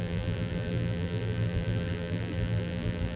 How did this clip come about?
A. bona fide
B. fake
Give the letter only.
B